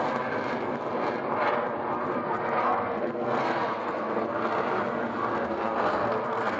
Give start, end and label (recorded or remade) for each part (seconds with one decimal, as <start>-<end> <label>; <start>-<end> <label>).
0.0-2.1 recorded; 2.1-4.2 remade; 4.2-5.3 recorded; 5.3-6.6 remade